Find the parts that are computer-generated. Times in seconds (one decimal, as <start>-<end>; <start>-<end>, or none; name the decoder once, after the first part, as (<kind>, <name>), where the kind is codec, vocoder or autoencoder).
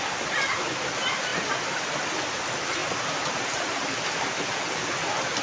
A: none